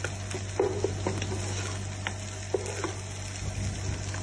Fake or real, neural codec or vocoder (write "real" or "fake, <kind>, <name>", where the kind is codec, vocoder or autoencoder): real